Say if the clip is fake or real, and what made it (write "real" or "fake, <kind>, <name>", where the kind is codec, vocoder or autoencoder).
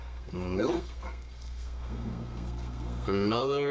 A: fake, codec, SNAC